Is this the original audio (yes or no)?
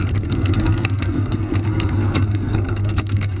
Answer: no